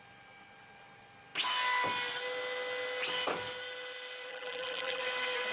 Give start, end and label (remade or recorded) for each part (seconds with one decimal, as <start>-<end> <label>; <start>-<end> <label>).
0.0-4.3 recorded; 4.3-5.0 remade; 5.0-5.5 recorded